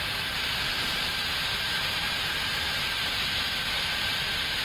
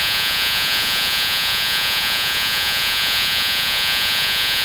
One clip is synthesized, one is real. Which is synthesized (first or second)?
second